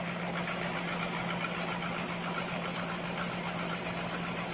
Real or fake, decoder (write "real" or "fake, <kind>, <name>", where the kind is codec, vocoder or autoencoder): real